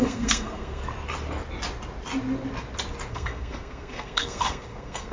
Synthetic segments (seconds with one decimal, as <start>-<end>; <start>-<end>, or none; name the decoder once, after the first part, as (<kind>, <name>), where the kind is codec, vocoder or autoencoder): 0.0-0.8 (codec, SNAC); 3.1-5.1